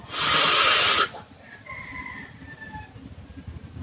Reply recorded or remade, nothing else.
recorded